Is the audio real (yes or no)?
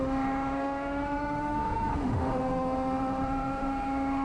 no